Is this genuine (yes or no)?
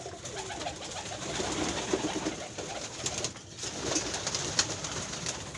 yes